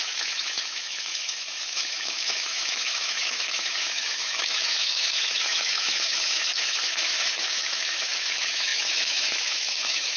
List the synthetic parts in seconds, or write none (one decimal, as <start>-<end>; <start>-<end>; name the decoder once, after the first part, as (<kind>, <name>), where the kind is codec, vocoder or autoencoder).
0.0-10.2 (autoencoder, DAC-VAE)